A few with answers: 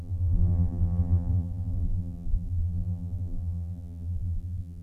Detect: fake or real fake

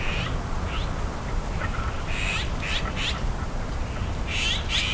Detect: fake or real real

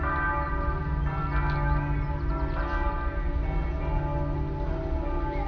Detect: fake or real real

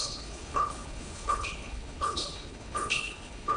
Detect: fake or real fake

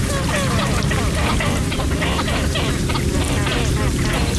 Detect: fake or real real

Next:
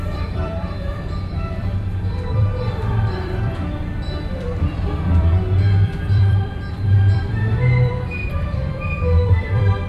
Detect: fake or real fake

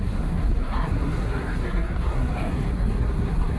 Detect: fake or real fake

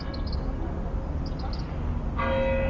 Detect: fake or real real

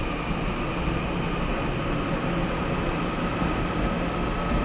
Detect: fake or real real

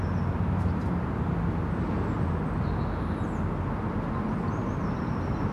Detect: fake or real real